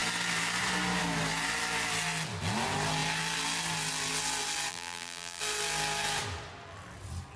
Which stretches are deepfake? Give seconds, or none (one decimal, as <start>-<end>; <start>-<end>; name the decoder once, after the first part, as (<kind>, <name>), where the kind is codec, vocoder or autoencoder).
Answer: 4.7-5.4 (vocoder, BigVGAN v2)